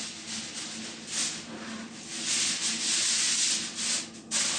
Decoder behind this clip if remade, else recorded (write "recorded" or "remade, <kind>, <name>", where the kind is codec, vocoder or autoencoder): recorded